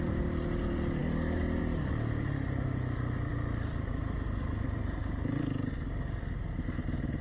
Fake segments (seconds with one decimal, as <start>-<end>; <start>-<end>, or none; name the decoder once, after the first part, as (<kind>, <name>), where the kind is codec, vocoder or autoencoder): none